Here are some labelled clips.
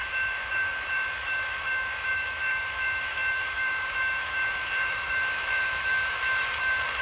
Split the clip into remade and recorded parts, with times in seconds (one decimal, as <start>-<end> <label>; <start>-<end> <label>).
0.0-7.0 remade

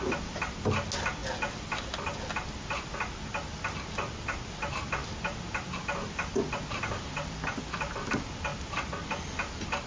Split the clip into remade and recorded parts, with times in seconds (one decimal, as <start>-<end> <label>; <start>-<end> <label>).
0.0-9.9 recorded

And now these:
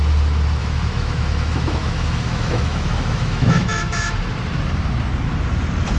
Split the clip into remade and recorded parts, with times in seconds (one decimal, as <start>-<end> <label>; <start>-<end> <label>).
0.0-0.6 recorded; 0.6-4.2 remade; 4.2-6.0 recorded

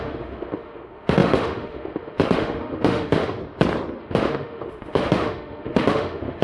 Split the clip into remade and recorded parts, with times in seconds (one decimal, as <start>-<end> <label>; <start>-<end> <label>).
0.0-3.4 remade; 3.4-4.0 recorded; 4.0-6.4 remade